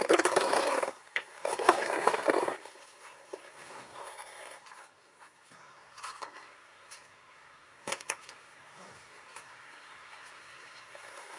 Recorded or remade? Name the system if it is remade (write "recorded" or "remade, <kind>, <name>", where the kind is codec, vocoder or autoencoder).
remade, codec, SNAC